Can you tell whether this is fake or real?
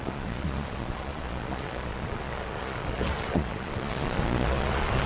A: fake